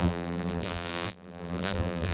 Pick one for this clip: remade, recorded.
remade